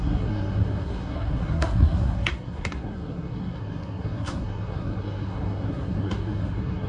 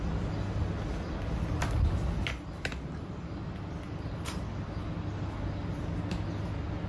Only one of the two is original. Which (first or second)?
second